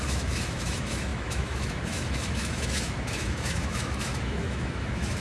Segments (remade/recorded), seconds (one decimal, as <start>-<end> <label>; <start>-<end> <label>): 0.0-5.2 remade